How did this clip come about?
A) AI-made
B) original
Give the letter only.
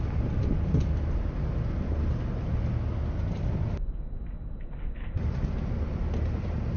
B